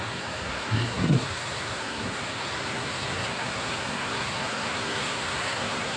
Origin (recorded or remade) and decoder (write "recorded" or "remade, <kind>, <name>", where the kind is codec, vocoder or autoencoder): remade, codec, SNAC